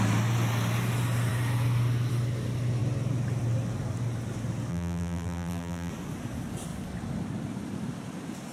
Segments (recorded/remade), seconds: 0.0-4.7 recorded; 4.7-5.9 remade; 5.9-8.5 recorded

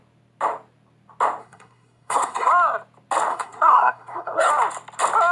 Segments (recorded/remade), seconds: 0.0-1.4 recorded; 1.4-2.5 remade; 2.5-3.3 recorded; 3.3-4.5 remade; 4.5-5.3 recorded

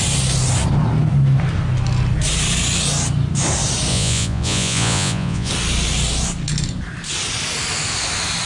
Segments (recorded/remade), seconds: 0.0-3.9 recorded; 3.9-5.5 remade; 5.5-8.5 recorded

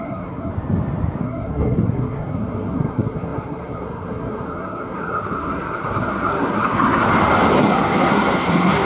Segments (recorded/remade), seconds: 0.0-0.5 remade; 0.5-1.2 recorded; 1.2-7.1 remade; 7.1-7.6 recorded; 7.6-8.8 remade

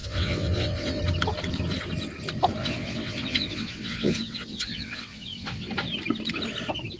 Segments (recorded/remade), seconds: 0.0-1.0 remade; 1.0-2.6 recorded; 2.6-5.7 remade; 5.7-7.0 recorded

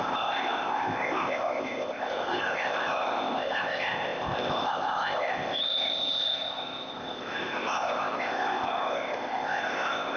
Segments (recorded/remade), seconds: 0.0-10.2 remade